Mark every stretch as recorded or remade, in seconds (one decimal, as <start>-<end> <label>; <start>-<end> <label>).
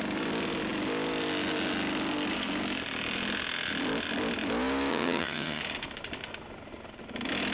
0.0-4.9 recorded; 4.9-5.6 remade; 5.6-7.5 recorded